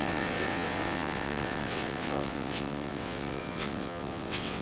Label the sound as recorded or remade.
remade